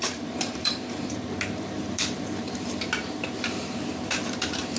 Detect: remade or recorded remade